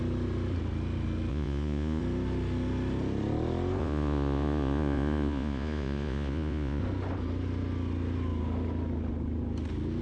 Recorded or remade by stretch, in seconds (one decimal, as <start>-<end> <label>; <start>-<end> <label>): 0.0-1.3 recorded; 1.3-2.0 remade; 2.0-3.8 recorded; 3.8-6.8 remade; 6.8-10.0 recorded

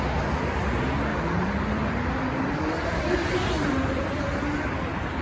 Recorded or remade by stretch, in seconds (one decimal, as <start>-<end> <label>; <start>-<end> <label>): 0.0-1.1 recorded; 1.1-4.2 remade; 4.2-5.2 recorded

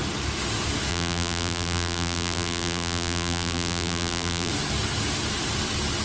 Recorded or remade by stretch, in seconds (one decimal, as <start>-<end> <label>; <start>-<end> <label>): 0.0-0.9 recorded; 0.9-4.5 remade; 4.5-6.0 recorded